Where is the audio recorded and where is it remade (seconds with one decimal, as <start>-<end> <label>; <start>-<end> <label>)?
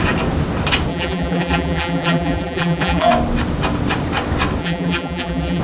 0.0-0.9 recorded; 0.9-3.1 remade; 3.1-4.6 recorded; 4.6-5.6 remade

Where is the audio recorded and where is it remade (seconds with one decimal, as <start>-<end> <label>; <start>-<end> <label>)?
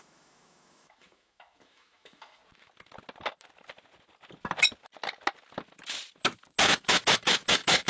0.0-2.4 remade; 2.4-6.6 recorded; 6.6-7.9 remade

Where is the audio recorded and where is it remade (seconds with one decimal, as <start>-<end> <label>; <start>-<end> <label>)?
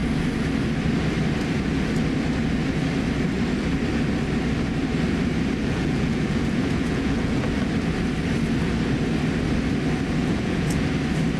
0.0-5.6 recorded; 5.6-7.4 remade; 7.4-10.2 recorded; 10.2-10.9 remade; 10.9-11.4 recorded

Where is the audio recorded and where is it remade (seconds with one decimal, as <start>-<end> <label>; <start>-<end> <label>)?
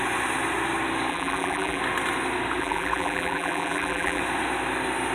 0.0-1.1 recorded; 1.1-1.8 remade; 1.8-2.6 recorded; 2.6-4.2 remade; 4.2-5.1 recorded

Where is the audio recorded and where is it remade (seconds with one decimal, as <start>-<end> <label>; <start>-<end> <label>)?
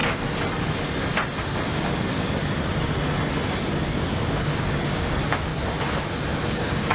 0.0-1.7 recorded; 1.7-2.4 remade; 2.4-3.6 recorded; 3.6-5.5 remade; 5.5-6.5 recorded; 6.5-6.9 remade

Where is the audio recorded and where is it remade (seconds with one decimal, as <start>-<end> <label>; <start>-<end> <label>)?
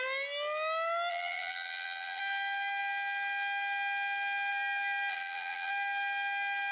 0.0-1.1 recorded; 1.1-2.2 remade; 2.2-5.1 recorded; 5.1-5.7 remade; 5.7-6.7 recorded